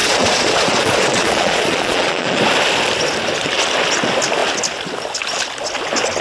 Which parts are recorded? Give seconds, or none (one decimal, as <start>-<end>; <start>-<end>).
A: 2.4-6.2